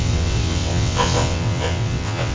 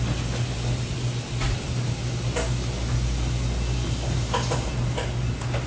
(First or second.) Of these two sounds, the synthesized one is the first